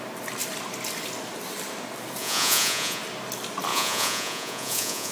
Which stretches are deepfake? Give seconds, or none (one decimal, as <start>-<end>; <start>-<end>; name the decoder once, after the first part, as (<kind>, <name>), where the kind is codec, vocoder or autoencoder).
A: 2.2-3.0 (vocoder, Vocos); 3.7-5.1